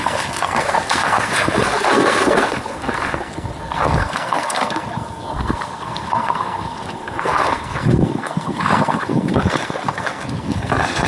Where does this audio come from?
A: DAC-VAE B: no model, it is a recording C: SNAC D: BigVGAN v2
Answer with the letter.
C